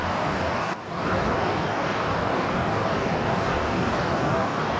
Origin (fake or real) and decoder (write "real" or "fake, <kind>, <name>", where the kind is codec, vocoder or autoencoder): fake, codec, DAC